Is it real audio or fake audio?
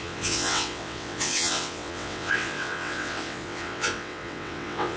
fake